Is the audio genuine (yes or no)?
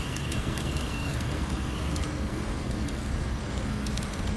no